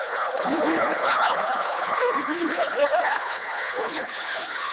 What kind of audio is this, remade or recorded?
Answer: remade